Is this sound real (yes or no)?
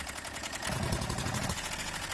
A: no